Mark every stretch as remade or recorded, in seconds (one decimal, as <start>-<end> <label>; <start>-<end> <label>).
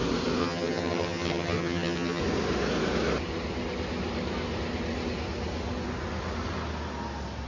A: 0.0-0.4 recorded; 0.4-2.2 remade; 2.2-7.5 recorded